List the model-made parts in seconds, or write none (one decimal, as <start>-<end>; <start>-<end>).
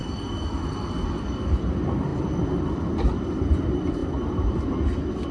none